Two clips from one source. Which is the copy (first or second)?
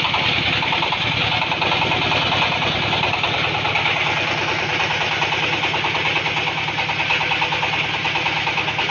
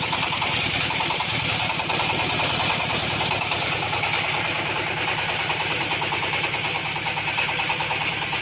second